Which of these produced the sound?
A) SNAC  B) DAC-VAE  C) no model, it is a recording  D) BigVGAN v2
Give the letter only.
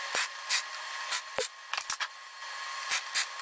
C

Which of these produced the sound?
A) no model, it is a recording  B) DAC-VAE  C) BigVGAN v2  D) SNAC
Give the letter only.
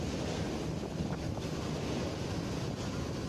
A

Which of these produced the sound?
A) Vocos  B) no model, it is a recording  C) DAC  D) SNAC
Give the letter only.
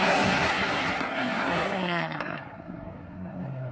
D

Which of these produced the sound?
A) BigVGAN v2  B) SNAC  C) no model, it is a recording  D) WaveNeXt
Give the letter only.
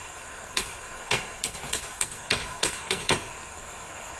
B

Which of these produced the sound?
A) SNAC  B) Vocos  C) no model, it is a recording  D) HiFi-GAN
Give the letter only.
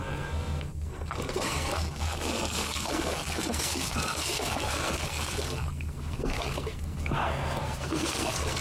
A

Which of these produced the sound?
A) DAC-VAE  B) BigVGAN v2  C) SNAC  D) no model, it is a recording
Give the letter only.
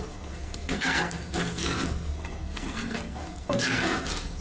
C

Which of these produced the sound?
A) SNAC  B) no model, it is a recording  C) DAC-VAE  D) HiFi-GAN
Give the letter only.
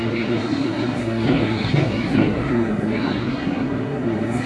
A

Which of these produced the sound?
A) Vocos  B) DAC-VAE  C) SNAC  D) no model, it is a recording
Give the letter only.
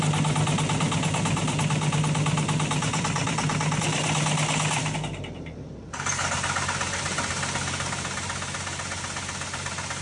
D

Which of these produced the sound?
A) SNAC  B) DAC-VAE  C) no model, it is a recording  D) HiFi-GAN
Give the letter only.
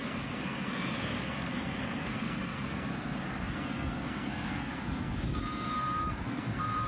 A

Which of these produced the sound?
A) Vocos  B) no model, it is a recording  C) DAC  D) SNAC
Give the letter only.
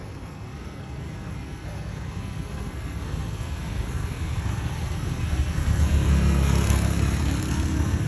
D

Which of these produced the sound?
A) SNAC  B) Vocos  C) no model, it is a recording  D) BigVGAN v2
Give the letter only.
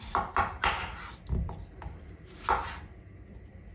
C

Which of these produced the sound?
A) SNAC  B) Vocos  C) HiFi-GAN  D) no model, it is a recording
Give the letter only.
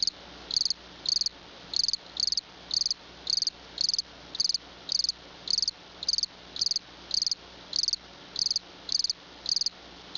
D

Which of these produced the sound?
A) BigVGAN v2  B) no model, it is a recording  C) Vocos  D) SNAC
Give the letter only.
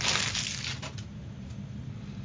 B